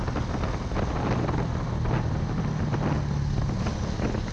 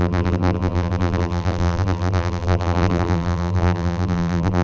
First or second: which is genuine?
first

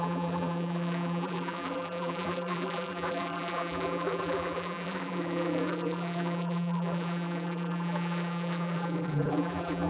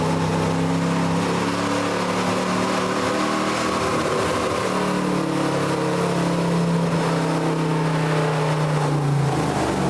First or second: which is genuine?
second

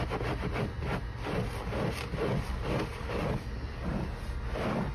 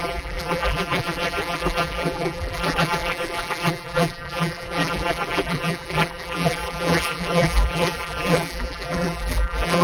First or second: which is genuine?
first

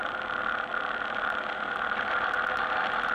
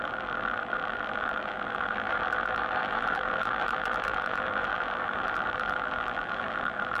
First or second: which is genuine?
first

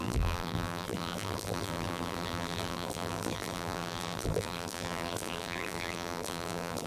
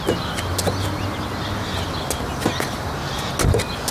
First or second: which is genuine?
second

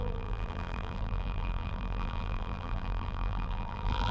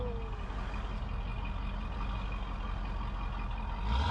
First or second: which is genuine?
second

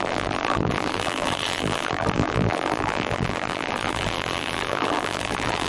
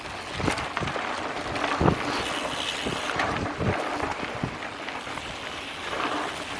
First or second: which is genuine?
second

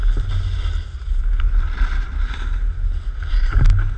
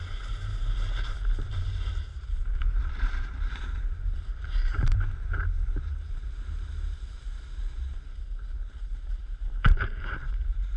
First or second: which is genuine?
first